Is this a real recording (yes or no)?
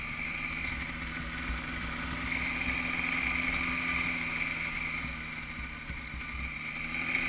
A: yes